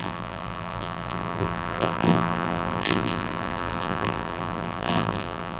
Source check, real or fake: fake